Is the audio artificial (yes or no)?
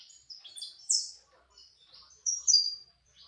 yes